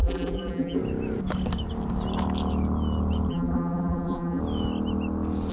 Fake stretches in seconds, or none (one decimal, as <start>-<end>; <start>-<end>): 0.0-0.8; 3.3-4.4